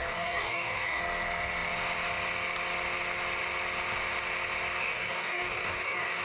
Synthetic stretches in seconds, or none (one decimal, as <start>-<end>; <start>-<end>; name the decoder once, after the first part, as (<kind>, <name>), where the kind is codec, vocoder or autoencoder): 0.0-1.0 (codec, DAC); 4.8-6.2